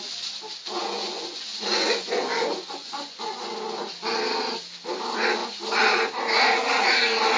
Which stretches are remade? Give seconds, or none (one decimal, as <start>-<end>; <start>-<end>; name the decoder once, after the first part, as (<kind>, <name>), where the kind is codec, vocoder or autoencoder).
0.8-3.5 (vocoder, Vocos)